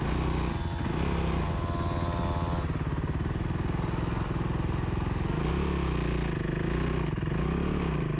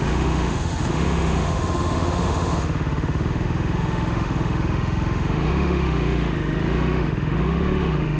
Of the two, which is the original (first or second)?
first